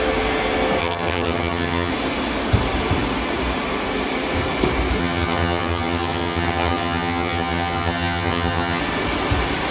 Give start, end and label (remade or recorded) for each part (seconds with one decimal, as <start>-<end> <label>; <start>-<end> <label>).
0.0-0.8 recorded; 0.8-1.9 remade; 1.9-5.0 recorded; 5.0-8.8 remade; 8.8-9.7 recorded